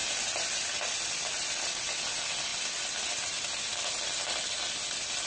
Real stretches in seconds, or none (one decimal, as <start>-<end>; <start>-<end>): 0.0-2.5; 3.6-5.3